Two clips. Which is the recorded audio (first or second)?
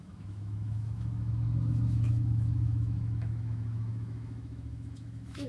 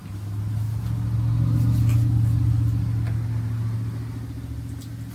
second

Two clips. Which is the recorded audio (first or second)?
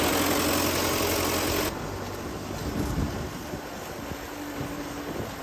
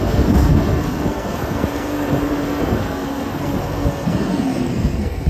first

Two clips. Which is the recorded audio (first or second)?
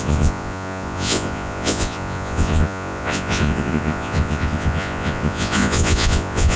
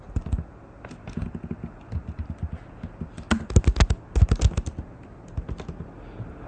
second